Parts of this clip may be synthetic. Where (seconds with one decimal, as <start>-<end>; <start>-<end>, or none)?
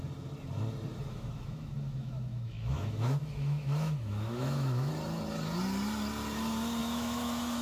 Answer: 1.1-4.9; 6.8-7.6